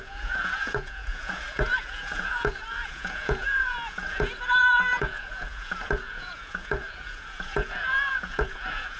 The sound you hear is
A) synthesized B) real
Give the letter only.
A